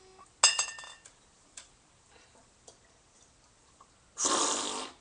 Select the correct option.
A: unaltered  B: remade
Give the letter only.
A